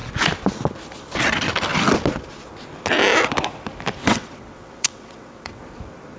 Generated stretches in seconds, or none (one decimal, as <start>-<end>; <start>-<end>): 4.0-5.6